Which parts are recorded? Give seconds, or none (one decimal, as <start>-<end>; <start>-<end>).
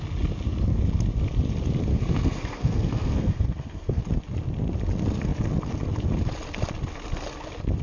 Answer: 0.0-1.9; 4.0-7.8